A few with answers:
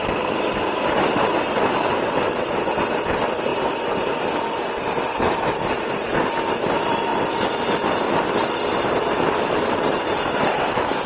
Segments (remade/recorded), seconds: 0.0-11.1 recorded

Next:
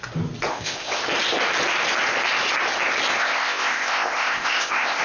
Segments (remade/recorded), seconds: 0.0-0.5 recorded; 0.5-1.0 remade; 1.0-3.2 recorded; 3.2-5.0 remade

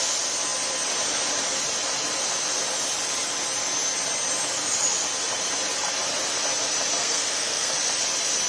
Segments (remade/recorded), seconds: 0.0-7.0 recorded; 7.0-7.7 remade; 7.7-8.5 recorded

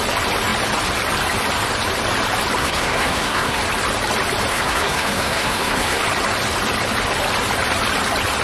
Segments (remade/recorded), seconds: 0.0-2.6 recorded; 2.6-3.6 remade; 3.6-4.5 recorded; 4.5-6.0 remade; 6.0-8.4 recorded

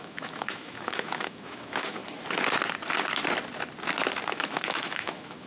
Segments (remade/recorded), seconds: 0.0-2.0 remade; 2.0-4.3 recorded; 4.3-5.5 remade